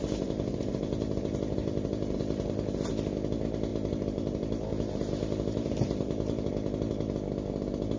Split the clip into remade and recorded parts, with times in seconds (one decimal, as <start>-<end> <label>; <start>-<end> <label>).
0.0-2.9 remade; 2.9-3.7 recorded; 3.7-6.5 remade; 6.5-8.0 recorded